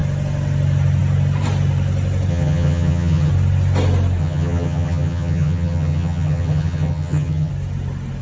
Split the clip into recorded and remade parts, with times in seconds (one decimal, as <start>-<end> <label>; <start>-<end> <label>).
0.0-2.3 recorded; 2.3-3.3 remade; 3.3-4.2 recorded; 4.2-7.5 remade; 7.5-8.2 recorded